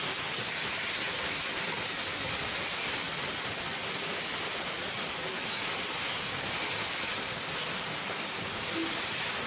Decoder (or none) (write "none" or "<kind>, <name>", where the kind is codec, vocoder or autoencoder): none